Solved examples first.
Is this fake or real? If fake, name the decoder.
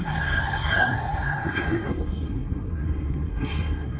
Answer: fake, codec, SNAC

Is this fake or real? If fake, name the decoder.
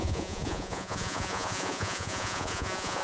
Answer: fake, vocoder, Vocos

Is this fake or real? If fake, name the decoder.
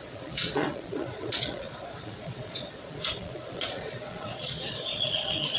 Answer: fake, vocoder, Vocos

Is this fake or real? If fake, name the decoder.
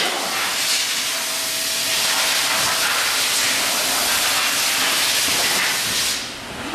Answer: real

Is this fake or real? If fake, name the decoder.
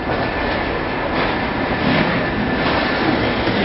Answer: real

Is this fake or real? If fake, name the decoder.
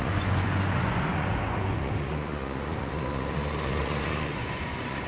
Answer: fake, vocoder, Vocos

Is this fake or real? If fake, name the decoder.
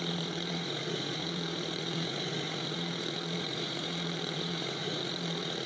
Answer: fake, vocoder, Vocos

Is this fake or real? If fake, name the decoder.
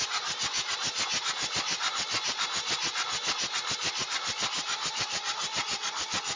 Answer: real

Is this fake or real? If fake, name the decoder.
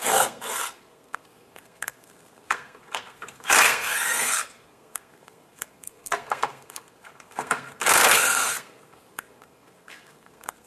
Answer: fake, codec, SNAC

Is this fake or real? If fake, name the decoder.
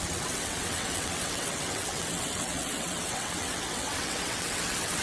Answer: fake, vocoder, WaveNeXt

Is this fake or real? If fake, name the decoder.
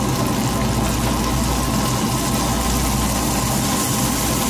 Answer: real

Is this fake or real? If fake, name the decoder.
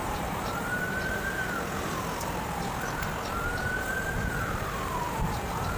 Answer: fake, vocoder, BigVGAN v2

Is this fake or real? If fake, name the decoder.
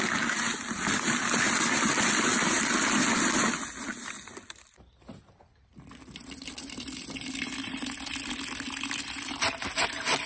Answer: real